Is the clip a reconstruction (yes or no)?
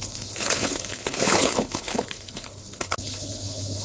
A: yes